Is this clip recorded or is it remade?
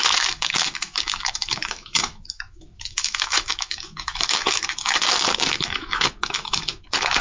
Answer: remade